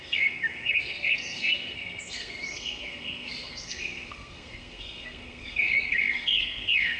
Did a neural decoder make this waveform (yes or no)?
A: yes